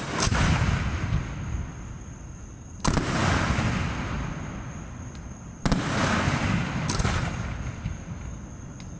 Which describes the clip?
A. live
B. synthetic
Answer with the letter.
A